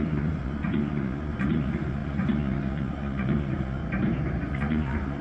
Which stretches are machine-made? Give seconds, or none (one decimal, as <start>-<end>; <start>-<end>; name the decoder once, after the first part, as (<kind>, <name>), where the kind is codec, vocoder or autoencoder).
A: 0.0-3.8 (vocoder, Vocos); 4.5-5.2